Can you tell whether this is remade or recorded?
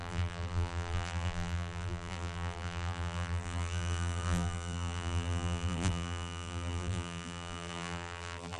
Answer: remade